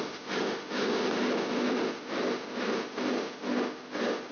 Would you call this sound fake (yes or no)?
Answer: no